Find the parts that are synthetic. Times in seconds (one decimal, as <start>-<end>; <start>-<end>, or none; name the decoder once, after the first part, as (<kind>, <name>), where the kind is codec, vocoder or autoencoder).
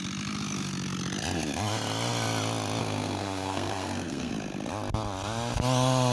2.8-4.3 (codec, SNAC)